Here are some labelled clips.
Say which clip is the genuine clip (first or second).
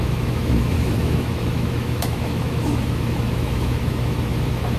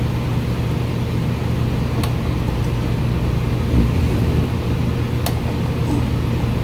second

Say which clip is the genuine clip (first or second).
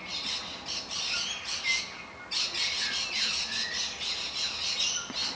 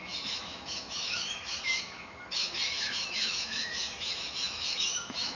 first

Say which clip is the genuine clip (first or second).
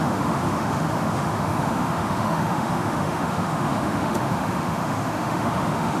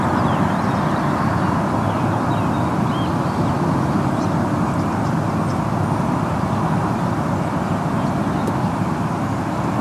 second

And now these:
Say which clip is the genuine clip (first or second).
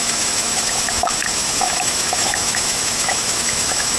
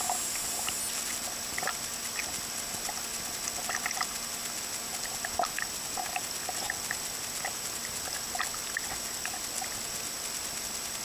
second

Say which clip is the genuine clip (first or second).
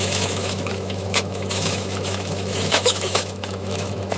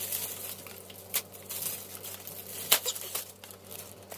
second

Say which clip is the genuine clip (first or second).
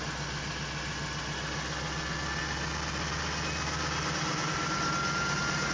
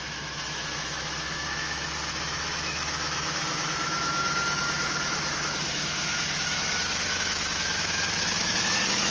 first